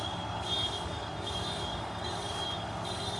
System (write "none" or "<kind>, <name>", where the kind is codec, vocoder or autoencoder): codec, DAC